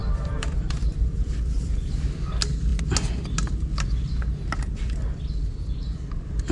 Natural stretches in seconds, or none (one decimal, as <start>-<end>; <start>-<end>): 1.4-6.5

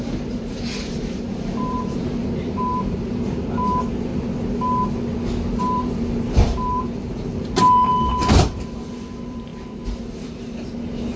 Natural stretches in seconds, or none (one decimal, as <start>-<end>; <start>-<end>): 4.1-5.6; 9.5-10.0

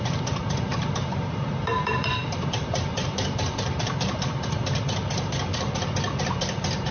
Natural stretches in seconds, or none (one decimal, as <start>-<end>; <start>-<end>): 4.6-6.9